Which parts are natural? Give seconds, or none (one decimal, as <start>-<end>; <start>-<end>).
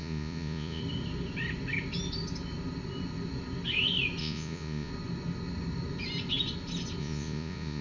0.8-4.2; 4.9-7.0